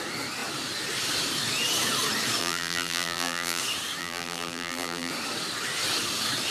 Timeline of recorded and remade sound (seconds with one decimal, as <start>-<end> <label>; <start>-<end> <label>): 0.0-2.4 recorded; 2.4-3.6 remade; 3.6-4.0 recorded; 4.0-5.1 remade; 5.1-6.5 recorded